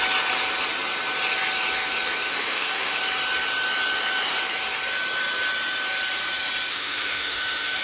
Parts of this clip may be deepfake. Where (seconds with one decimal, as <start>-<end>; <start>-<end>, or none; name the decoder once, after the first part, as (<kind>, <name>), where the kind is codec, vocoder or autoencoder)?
2.3-3.0 (autoencoder, DAC-VAE); 6.7-7.8